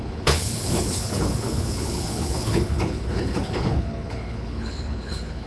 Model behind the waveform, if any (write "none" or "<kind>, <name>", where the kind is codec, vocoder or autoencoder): codec, HILCodec